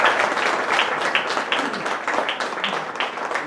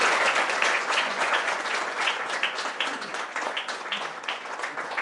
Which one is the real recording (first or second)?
first